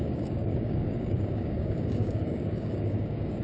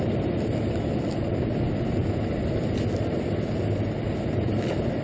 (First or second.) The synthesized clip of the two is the first